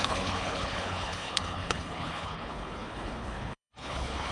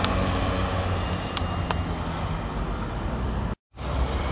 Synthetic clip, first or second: first